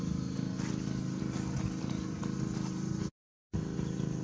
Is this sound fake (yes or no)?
no